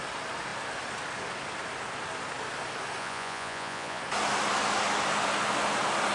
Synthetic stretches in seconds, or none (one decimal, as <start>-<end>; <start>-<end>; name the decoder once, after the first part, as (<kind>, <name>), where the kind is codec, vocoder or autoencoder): 3.0-4.0 (vocoder, Vocos)